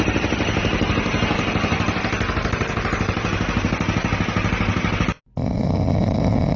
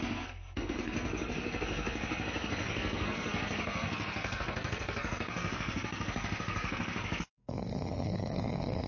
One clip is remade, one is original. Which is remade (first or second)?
second